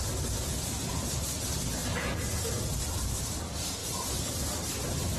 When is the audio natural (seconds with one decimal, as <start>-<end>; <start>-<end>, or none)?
0.0-1.8; 3.1-3.8